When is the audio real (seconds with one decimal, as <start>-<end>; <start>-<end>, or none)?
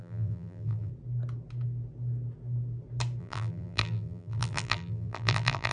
0.9-3.2